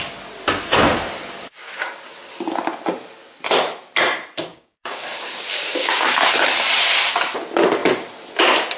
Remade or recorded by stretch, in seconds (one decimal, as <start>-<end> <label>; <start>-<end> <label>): 0.0-1.6 recorded; 1.6-2.4 remade; 2.4-4.5 recorded; 4.5-6.1 remade; 6.1-8.8 recorded